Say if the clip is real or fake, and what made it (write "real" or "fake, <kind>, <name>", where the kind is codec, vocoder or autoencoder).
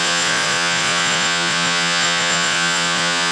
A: fake, vocoder, Vocos